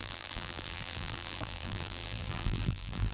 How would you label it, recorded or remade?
remade